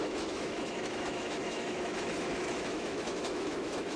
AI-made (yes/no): yes